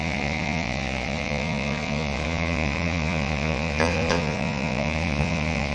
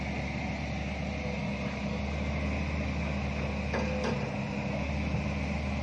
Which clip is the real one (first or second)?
second